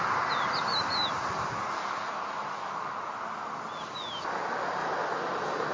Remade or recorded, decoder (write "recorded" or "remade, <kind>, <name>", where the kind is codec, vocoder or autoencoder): recorded